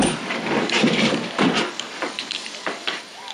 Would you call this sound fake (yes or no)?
yes